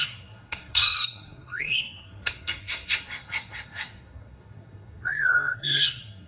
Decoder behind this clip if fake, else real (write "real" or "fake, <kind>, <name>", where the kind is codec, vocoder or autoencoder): fake, codec, SNAC